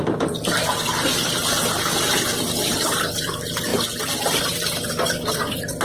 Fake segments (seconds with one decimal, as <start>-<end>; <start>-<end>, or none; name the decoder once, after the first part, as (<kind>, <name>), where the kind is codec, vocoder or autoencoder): 0.0-1.4 (vocoder, BigVGAN v2); 2.1-5.8